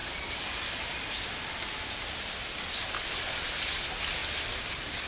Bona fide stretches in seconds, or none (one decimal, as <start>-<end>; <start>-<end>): 0.0-5.1